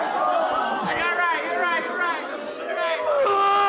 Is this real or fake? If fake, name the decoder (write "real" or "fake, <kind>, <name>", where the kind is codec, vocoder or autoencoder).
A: real